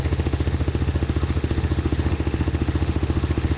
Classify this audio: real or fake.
fake